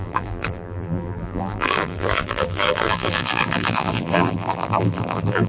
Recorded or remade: remade